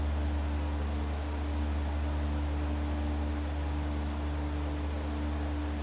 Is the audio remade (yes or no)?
no